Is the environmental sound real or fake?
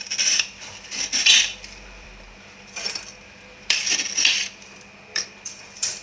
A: fake